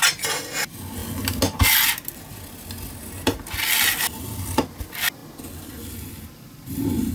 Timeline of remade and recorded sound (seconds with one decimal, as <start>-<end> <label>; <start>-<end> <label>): 0.0-7.1 recorded